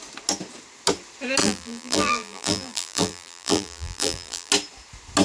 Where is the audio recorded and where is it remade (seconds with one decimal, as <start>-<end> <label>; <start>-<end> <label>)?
0.0-1.4 recorded; 1.4-4.5 remade; 4.5-5.2 recorded